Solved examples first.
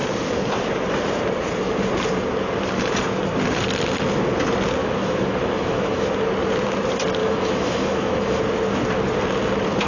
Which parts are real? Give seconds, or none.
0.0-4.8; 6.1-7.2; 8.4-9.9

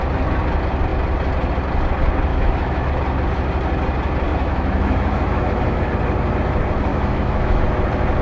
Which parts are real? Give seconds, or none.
0.0-2.3; 2.9-4.3; 5.9-6.9; 7.6-8.2

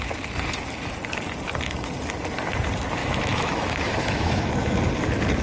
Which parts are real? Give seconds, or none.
0.0-3.0; 4.5-5.4

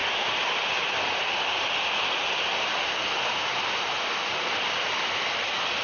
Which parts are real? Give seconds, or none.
0.0-5.8

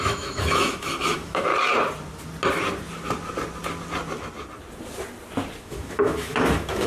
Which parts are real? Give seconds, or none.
1.5-5.6

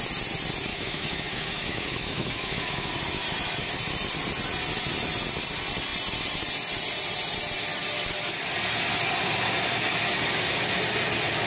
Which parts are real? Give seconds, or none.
0.0-0.7; 2.9-11.5